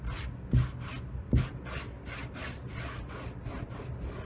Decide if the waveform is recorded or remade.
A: recorded